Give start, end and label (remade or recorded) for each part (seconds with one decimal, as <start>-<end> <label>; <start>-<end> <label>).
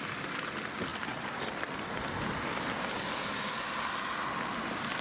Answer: 0.0-5.0 recorded